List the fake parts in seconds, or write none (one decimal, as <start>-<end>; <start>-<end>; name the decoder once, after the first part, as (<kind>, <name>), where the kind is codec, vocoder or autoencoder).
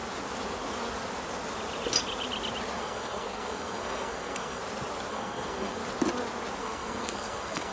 2.8-4.6 (codec, SNAC); 5.1-5.8; 6.6-7.7